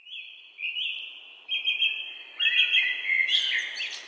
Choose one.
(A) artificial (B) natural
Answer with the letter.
B